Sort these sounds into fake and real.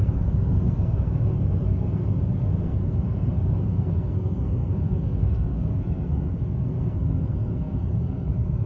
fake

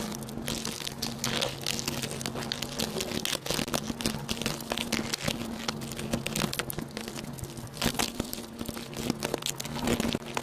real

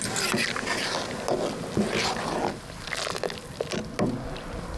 real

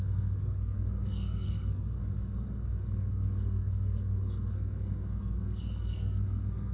fake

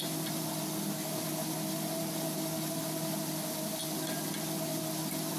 real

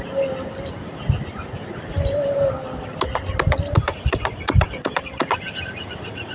real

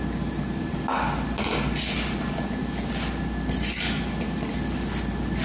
real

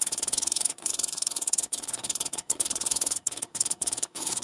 fake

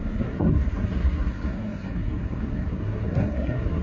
fake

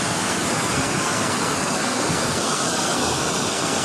fake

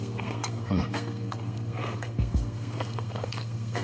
fake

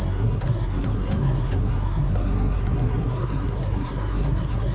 fake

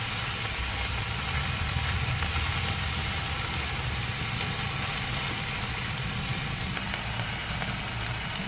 real